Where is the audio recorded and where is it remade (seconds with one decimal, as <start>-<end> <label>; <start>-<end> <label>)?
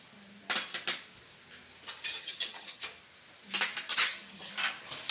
0.0-2.2 recorded; 2.2-2.8 remade; 2.8-3.9 recorded; 3.9-4.5 remade; 4.5-5.1 recorded